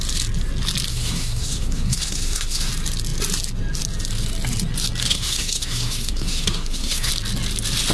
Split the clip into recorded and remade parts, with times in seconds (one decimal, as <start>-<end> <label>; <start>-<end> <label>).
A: 0.0-0.9 recorded; 0.9-2.7 remade; 2.7-5.0 recorded; 5.0-7.1 remade; 7.1-7.9 recorded

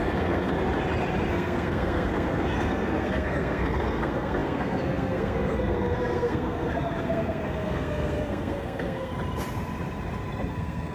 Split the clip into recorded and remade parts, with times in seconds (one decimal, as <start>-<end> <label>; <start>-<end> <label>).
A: 0.0-0.5 remade; 0.5-1.3 recorded; 1.3-9.1 remade; 9.1-10.5 recorded; 10.5-10.9 remade

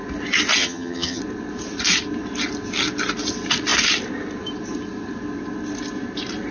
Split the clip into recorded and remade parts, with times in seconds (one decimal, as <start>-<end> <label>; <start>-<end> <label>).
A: 0.0-0.6 recorded; 0.6-1.2 remade; 1.2-6.5 recorded

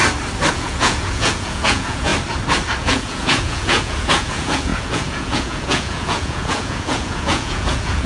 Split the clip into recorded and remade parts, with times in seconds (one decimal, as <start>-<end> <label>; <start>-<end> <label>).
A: 0.0-0.5 recorded; 0.5-2.1 remade; 2.1-2.8 recorded; 2.8-8.1 remade

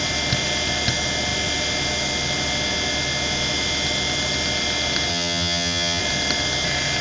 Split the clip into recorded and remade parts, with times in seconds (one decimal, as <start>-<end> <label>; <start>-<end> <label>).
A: 0.0-5.1 recorded; 5.1-6.0 remade; 6.0-7.0 recorded